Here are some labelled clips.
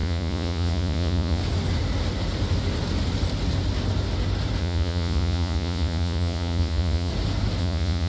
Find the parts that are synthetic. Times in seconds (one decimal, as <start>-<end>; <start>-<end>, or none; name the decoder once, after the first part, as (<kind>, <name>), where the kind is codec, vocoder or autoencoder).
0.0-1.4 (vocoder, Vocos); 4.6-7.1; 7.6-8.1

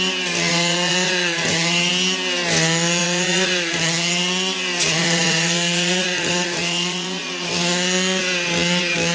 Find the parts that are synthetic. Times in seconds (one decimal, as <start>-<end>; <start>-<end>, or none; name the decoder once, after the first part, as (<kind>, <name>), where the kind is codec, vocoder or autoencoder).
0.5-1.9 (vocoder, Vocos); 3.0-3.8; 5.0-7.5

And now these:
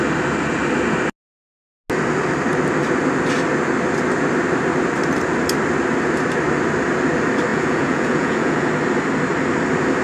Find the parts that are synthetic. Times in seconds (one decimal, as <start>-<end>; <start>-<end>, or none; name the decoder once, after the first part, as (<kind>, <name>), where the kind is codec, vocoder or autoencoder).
7.5-8.7 (vocoder, Vocos)

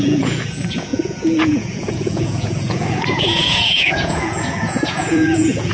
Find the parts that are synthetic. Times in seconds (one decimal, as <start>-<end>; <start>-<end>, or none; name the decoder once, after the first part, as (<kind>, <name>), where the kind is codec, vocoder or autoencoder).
0.0-5.7 (vocoder, Vocos)

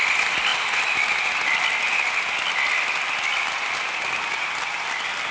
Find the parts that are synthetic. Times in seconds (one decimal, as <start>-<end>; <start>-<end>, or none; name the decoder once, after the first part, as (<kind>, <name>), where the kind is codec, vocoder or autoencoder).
none

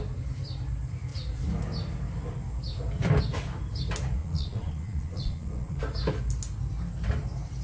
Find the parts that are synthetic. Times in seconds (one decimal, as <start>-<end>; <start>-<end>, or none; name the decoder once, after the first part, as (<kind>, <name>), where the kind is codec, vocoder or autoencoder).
4.2-5.8 (vocoder, Vocos)

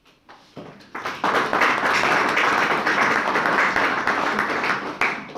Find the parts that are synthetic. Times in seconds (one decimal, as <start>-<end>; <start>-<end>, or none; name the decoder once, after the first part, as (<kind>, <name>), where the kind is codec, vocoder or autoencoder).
none